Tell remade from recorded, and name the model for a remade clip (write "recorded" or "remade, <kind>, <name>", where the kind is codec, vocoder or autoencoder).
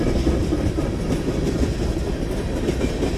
recorded